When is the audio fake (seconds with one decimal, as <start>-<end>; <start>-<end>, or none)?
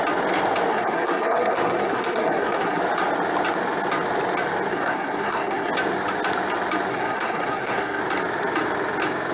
0.7-2.8; 4.7-5.7; 6.9-8.0